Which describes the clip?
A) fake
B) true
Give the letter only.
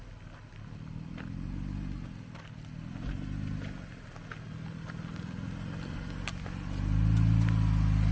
B